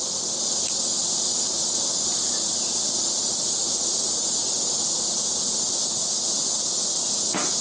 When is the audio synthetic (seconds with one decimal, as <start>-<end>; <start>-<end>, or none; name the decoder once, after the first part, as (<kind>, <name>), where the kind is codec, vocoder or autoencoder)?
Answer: none